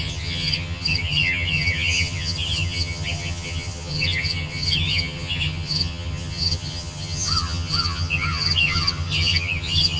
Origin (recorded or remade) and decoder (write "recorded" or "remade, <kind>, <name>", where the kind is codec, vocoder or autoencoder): remade, vocoder, HiFi-GAN